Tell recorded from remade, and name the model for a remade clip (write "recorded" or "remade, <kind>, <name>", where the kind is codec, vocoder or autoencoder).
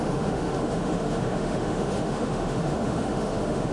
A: remade, autoencoder, DAC-VAE